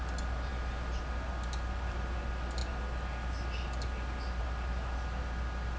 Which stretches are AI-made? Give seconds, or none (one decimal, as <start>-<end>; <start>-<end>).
none